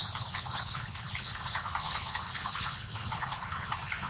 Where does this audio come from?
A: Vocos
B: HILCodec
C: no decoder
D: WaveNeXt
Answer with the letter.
B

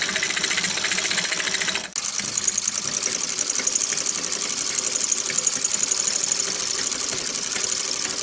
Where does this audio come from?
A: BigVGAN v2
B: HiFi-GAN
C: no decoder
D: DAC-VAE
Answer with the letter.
C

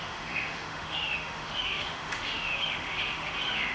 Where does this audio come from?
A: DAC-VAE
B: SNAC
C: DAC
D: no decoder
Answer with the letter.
A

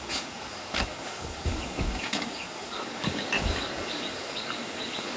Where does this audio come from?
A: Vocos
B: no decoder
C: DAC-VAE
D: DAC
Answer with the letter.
D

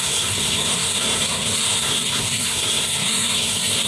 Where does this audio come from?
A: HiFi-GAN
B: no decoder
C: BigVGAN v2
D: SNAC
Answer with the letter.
D